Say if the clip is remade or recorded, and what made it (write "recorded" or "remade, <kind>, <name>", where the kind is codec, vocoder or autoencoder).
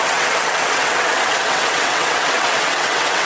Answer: remade, vocoder, WaveNeXt